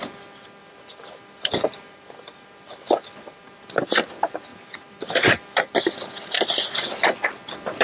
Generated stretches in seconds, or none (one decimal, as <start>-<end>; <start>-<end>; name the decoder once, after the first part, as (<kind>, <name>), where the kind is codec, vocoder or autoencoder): 0.6-4.0 (vocoder, BigVGAN v2); 4.5-5.7